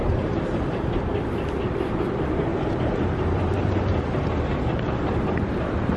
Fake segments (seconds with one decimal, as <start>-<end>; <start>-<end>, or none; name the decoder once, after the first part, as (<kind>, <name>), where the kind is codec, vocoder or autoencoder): 0.0-1.0 (vocoder, BigVGAN v2); 2.5-4.2